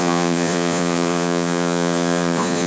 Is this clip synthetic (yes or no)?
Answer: yes